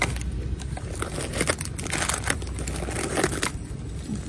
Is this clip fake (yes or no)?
no